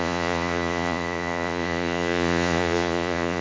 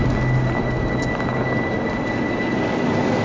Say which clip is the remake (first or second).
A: first